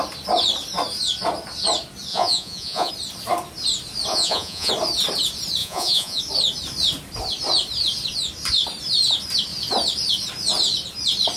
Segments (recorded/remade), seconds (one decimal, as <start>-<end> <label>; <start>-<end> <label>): 0.0-2.1 recorded; 2.1-2.9 remade; 2.9-4.1 recorded; 4.1-4.7 remade; 4.7-5.6 recorded; 5.6-6.2 remade; 6.2-11.4 recorded